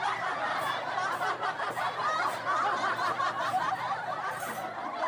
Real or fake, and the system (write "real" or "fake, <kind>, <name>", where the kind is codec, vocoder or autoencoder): real